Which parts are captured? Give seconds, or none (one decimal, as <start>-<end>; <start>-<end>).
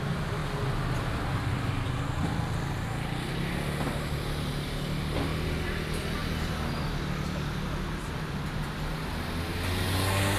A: 0.0-10.4